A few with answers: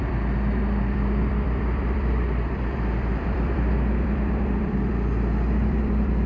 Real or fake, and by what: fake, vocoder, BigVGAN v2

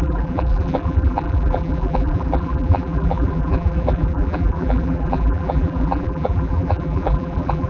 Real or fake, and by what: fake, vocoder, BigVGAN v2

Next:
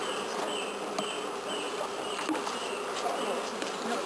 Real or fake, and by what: real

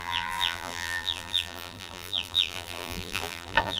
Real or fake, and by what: fake, vocoder, BigVGAN v2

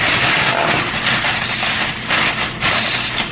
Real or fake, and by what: fake, vocoder, BigVGAN v2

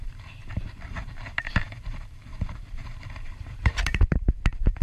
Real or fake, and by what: fake, vocoder, BigVGAN v2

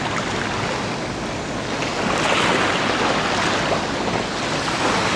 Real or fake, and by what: real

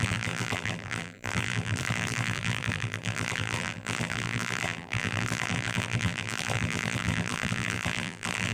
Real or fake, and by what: fake, vocoder, BigVGAN v2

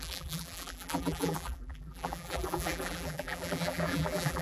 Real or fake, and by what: fake, vocoder, BigVGAN v2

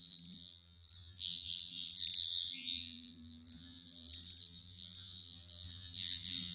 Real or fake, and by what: fake, vocoder, BigVGAN v2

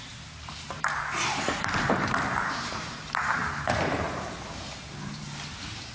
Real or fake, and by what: fake, vocoder, BigVGAN v2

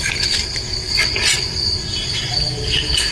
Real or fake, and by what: fake, vocoder, BigVGAN v2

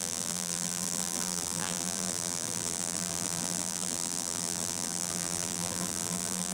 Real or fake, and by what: fake, vocoder, BigVGAN v2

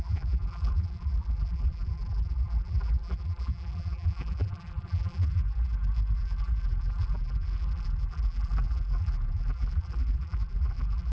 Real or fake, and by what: fake, vocoder, BigVGAN v2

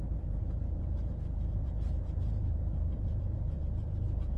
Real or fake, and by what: fake, vocoder, BigVGAN v2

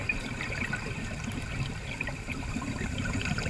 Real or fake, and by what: fake, vocoder, BigVGAN v2